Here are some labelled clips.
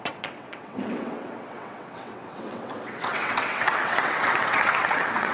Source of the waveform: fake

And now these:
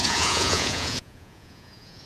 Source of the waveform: fake